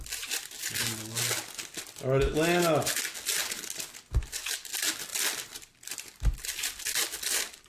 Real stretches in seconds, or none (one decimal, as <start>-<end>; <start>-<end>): 0.0-5.1; 5.8-7.7